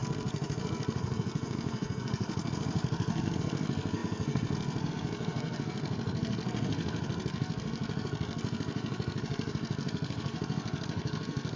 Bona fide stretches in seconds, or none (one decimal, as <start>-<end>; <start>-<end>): none